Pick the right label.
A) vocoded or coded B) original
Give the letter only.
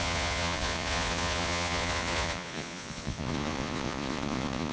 A